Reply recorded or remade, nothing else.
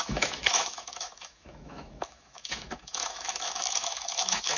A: remade